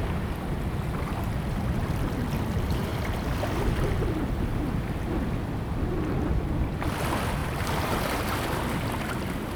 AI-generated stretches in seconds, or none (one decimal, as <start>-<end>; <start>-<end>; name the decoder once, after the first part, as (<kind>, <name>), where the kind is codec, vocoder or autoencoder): 7.4-8.3 (vocoder, BigVGAN v2)